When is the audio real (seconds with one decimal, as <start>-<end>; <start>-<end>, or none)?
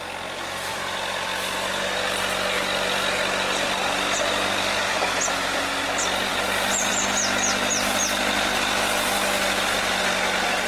0.0-10.7